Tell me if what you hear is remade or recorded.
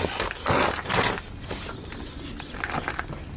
recorded